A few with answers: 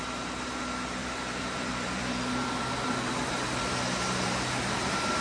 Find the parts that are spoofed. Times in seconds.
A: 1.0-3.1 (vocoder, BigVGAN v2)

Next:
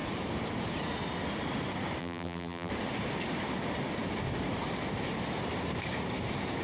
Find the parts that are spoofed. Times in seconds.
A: 2.0-2.7 (vocoder, BigVGAN v2)

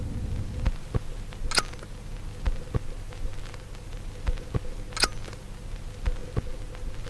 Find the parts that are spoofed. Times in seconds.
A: none

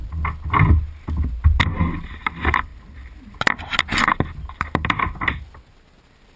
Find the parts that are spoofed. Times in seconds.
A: none

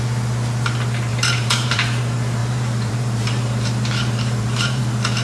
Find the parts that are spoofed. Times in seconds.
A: 1.1-2.0 (vocoder, BigVGAN v2); 2.4-4.8

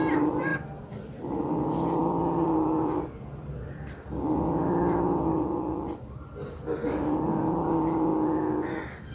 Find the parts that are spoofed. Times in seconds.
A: 0.0-8.1 (vocoder, BigVGAN v2)